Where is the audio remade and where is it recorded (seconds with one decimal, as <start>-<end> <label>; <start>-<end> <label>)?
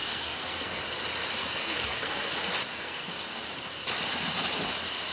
0.0-0.8 remade; 0.8-1.4 recorded; 1.4-2.3 remade; 2.3-2.7 recorded; 2.7-3.4 remade; 3.4-5.1 recorded